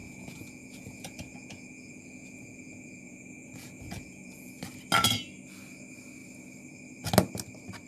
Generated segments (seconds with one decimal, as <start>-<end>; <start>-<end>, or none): 0.0-4.5